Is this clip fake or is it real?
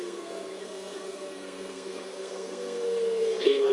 fake